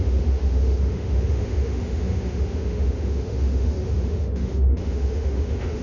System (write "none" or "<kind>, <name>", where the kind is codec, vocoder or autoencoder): autoencoder, DAC-VAE